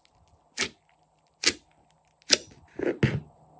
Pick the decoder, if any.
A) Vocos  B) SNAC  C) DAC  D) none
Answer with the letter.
D